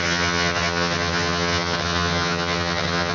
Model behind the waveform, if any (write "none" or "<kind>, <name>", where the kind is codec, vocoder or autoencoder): vocoder, HiFi-GAN